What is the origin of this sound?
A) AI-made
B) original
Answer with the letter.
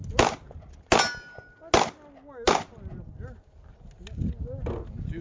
B